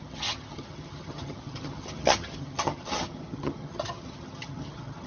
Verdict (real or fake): fake